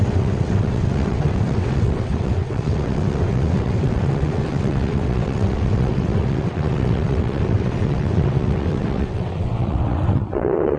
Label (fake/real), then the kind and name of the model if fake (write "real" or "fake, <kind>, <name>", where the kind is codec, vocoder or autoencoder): fake, vocoder, WaveNeXt